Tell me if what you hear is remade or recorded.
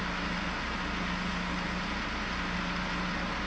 recorded